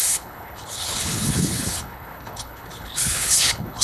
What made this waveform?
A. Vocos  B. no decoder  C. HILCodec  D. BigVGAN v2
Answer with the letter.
C